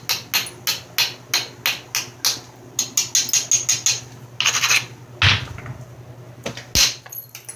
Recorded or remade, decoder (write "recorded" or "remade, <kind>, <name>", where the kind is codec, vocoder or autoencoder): recorded